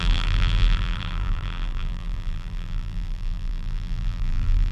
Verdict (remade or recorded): remade